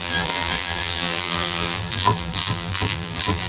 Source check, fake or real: fake